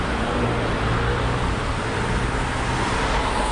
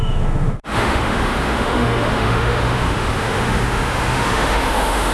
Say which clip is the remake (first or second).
second